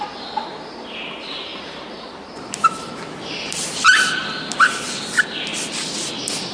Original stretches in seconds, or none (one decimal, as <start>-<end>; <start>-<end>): 0.0-6.5